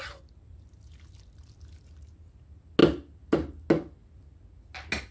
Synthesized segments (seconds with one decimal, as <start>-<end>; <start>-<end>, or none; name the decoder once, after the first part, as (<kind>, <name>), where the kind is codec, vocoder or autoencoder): none